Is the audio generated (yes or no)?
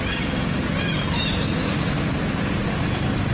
yes